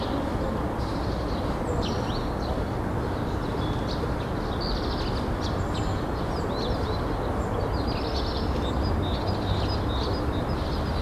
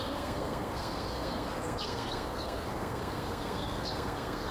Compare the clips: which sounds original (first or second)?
first